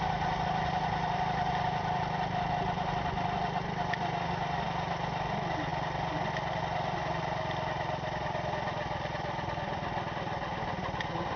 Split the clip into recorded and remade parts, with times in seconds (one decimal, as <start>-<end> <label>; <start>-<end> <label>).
0.0-11.4 recorded